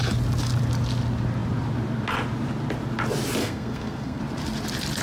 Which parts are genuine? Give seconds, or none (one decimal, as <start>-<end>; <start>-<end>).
0.0-3.4; 4.2-5.0